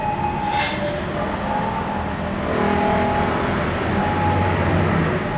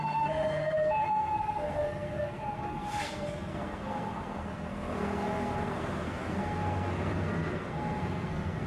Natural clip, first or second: first